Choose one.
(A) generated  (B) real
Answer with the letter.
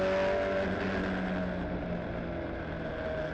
B